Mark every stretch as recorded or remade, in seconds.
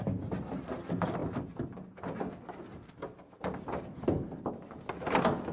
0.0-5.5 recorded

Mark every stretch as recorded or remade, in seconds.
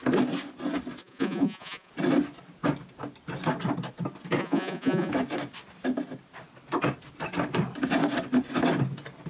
0.0-1.0 recorded; 1.0-1.9 remade; 1.9-4.4 recorded; 4.4-5.1 remade; 5.1-9.3 recorded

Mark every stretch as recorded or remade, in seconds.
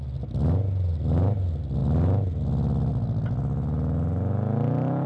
0.0-5.1 recorded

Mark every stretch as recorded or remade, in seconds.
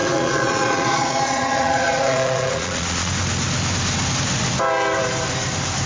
0.0-3.1 remade; 3.1-5.9 recorded